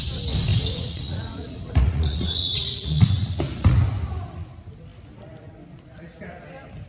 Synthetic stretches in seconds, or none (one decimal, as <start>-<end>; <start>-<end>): 0.5-3.8